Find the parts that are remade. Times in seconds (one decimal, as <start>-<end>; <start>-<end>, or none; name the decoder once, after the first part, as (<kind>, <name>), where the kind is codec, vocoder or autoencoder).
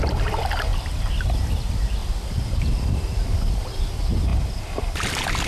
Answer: 4.3-5.1 (vocoder, BigVGAN v2)